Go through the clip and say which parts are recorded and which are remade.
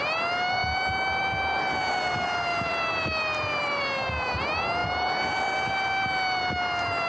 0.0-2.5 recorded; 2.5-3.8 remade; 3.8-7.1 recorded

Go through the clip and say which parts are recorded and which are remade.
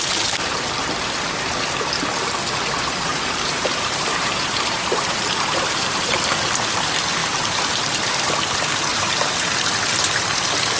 0.0-3.1 recorded; 3.1-6.2 remade; 6.2-7.2 recorded; 7.2-7.7 remade; 7.7-8.9 recorded; 8.9-9.5 remade; 9.5-10.8 recorded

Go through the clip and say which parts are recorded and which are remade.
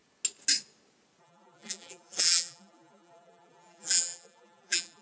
0.0-1.2 recorded; 1.2-5.0 remade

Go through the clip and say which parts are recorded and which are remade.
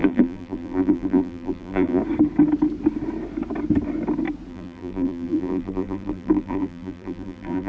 0.0-2.0 remade; 2.0-4.5 recorded; 4.5-7.7 remade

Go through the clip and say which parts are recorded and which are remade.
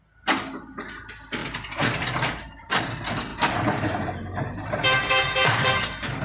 0.0-1.4 recorded; 1.4-2.7 remade; 2.7-3.3 recorded; 3.3-5.8 remade; 5.8-6.2 recorded